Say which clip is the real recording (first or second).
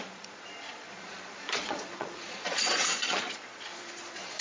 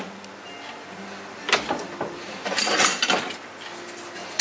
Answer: second